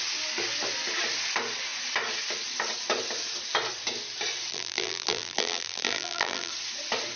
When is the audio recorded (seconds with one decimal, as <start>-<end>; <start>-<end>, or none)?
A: 0.0-4.5; 6.5-7.2